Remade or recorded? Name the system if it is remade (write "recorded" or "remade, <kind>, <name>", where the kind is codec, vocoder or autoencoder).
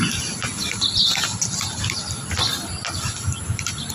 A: recorded